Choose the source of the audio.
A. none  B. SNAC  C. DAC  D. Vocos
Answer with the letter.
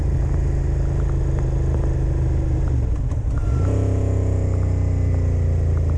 A